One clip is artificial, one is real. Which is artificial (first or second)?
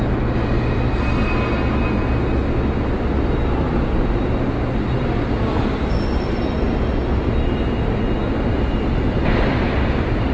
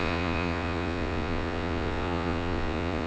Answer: second